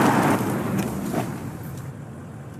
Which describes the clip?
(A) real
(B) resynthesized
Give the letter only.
A